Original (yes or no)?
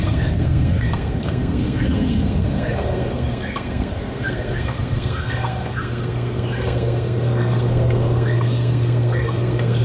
no